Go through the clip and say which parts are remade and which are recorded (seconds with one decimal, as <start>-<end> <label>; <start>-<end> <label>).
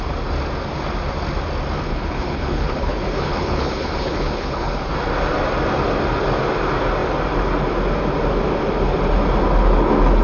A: 0.0-1.9 recorded; 1.9-4.9 remade; 4.9-10.2 recorded